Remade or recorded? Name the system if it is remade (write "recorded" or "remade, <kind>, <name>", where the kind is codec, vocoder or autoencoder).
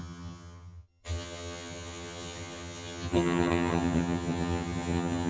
remade, vocoder, HiFi-GAN